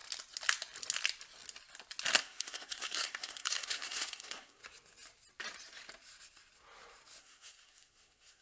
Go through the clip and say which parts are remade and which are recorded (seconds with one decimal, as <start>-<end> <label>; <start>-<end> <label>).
0.0-2.2 recorded; 2.2-4.6 remade; 4.6-7.2 recorded; 7.2-8.4 remade

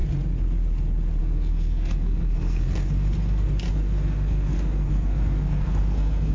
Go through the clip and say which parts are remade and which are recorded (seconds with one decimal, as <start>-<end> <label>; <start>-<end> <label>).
0.0-1.2 recorded; 1.2-6.3 remade

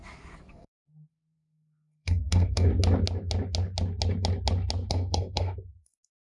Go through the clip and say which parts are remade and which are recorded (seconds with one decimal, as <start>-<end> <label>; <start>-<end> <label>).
0.0-0.5 recorded; 0.5-2.7 remade; 2.7-4.9 recorded; 4.9-6.3 remade